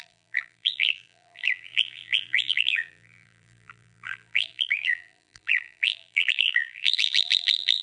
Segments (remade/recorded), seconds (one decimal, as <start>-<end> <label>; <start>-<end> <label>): 0.0-7.8 remade